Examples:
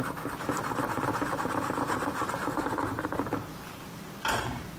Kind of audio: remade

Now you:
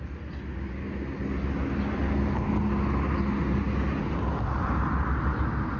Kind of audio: recorded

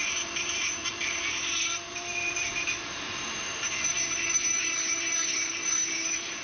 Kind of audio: remade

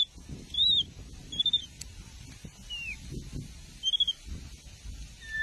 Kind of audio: recorded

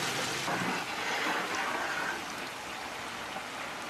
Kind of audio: recorded